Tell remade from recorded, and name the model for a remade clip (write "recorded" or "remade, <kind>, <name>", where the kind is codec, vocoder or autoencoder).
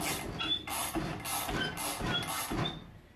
recorded